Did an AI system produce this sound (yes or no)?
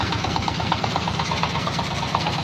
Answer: yes